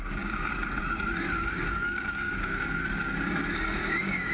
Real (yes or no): no